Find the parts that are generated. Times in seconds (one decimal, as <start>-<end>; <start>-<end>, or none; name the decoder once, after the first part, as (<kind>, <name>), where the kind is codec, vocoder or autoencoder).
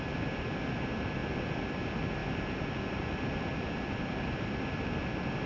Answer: none